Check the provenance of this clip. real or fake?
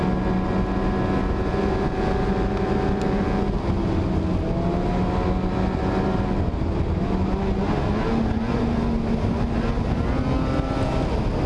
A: real